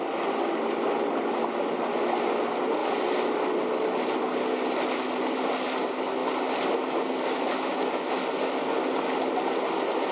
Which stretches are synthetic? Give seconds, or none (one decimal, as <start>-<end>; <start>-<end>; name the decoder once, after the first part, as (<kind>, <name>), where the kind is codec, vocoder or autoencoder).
none

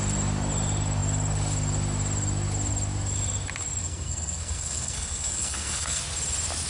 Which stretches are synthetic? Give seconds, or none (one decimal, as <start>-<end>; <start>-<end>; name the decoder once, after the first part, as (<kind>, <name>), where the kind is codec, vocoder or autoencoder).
3.8-6.0 (codec, SNAC)

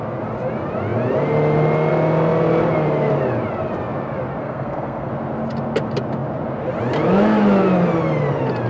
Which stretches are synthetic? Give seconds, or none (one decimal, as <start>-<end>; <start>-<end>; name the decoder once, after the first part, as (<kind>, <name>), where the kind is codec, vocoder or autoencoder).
4.4-5.1 (codec, SNAC)

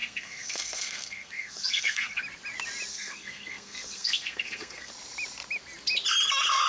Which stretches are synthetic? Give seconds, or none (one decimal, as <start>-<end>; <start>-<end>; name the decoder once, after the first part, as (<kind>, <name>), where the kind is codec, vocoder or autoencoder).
0.0-2.2 (codec, SNAC); 2.9-4.9

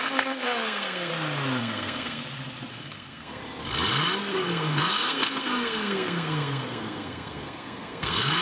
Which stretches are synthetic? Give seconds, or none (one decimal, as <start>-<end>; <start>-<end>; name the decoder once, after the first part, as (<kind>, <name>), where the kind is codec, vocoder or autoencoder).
0.0-1.1 (codec, SNAC); 1.6-2.2; 2.7-3.4; 4.3-8.4

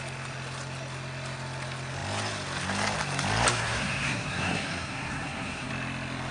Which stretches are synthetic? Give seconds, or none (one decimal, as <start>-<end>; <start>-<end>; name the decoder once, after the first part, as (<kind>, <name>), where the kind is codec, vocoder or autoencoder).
3.5-5.7 (codec, SNAC)

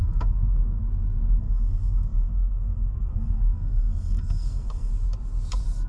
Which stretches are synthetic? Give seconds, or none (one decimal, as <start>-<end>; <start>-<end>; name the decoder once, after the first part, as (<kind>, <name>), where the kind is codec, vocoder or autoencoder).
0.0-0.8 (codec, SNAC); 1.4-4.9

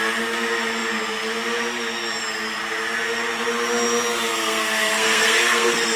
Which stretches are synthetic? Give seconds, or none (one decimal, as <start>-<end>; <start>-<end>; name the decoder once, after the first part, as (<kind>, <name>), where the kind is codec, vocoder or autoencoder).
4.3-6.0 (codec, SNAC)